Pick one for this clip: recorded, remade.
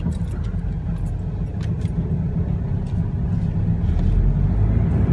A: recorded